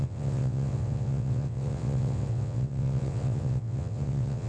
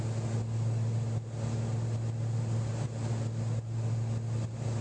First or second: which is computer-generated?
first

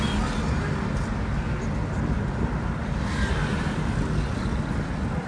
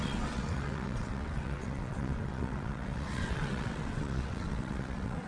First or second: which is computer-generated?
second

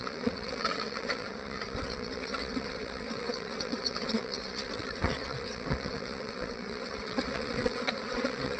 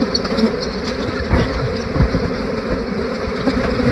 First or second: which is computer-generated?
first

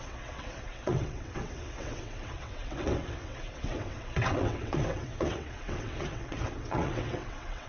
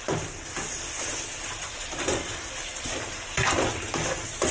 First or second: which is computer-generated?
first